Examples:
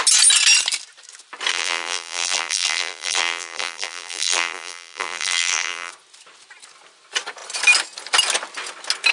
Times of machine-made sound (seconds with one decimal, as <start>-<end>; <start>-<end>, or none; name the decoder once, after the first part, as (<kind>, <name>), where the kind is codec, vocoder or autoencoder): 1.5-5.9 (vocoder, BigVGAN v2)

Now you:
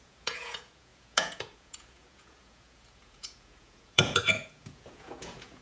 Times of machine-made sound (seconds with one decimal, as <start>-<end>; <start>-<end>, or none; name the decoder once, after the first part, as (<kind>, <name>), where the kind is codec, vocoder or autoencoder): 0.0-5.6 (vocoder, Vocos)

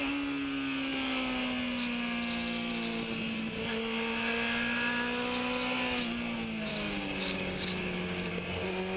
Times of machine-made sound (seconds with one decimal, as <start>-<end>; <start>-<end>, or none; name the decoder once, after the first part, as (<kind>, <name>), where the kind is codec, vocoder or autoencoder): 6.7-8.3 (codec, DAC)